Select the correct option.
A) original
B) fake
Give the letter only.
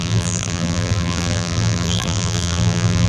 B